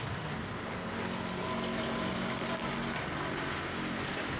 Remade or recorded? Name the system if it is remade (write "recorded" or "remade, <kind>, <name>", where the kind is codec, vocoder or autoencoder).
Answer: recorded